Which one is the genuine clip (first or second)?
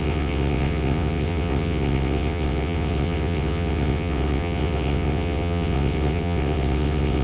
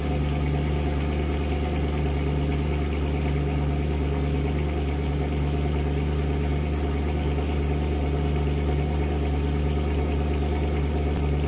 second